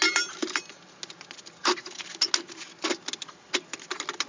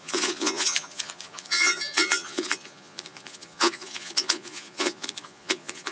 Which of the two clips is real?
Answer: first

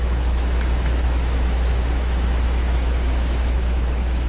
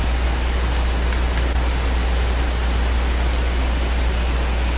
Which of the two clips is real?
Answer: second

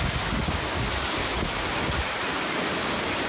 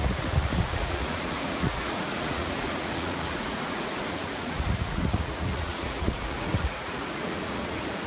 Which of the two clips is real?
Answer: first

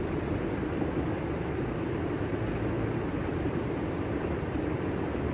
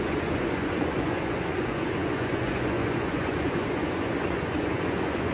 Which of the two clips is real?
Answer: first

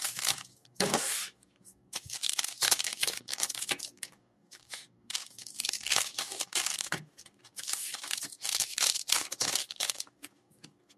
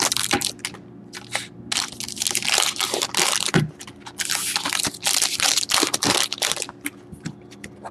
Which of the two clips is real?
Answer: second